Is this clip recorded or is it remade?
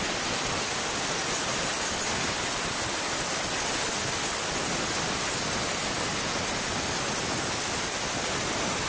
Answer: recorded